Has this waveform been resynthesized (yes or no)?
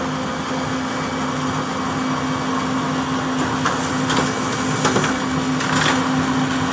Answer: no